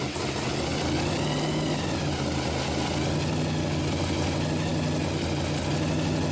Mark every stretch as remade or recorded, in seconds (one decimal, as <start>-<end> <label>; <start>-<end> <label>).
0.0-6.3 recorded